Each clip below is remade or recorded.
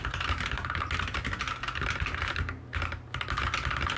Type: recorded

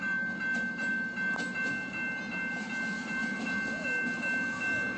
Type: recorded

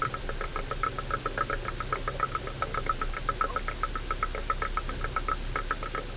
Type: recorded